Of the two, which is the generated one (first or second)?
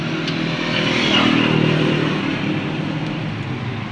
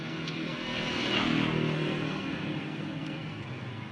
second